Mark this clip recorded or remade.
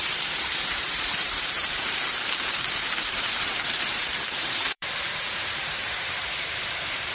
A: remade